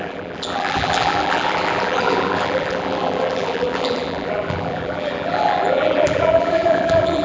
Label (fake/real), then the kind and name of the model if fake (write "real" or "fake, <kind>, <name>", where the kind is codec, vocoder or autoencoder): fake, vocoder, BigVGAN v2